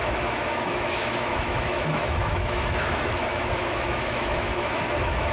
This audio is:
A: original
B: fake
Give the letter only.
B